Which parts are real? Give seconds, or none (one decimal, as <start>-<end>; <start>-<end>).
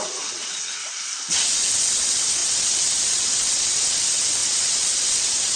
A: 0.8-1.3